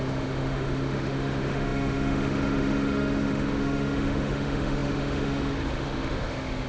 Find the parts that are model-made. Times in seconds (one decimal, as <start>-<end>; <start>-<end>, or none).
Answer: 0.0-6.7